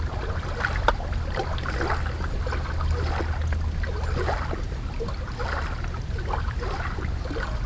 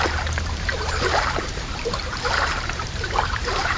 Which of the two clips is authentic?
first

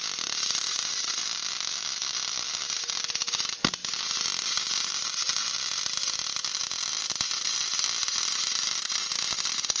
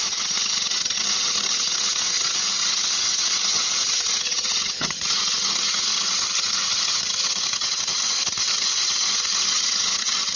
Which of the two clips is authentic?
first